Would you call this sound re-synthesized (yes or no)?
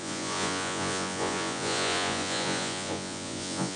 yes